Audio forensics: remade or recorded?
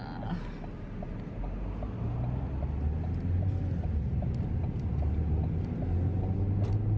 recorded